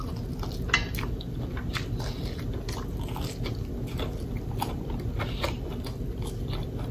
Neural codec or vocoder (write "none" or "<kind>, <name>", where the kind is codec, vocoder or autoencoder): none